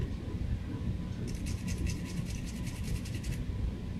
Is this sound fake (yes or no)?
no